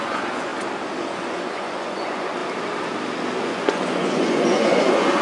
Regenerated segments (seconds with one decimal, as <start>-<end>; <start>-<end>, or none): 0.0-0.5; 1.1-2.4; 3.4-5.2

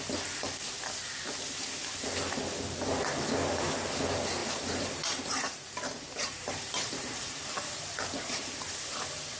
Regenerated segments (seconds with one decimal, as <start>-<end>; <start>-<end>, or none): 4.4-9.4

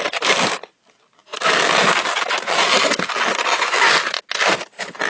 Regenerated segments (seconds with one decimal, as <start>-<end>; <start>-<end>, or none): none

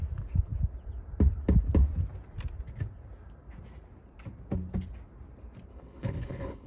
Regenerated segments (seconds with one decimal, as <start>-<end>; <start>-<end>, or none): 5.7-6.7

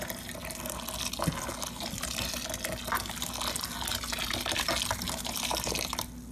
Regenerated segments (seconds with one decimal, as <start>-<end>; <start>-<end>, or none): none

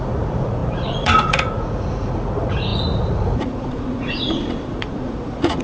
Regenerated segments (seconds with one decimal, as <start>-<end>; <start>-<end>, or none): 0.0-5.6